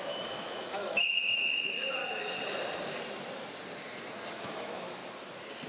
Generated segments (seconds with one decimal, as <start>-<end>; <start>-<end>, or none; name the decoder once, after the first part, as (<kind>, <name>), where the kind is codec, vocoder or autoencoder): 0.0-2.0 (autoencoder, DAC-VAE); 4.3-5.0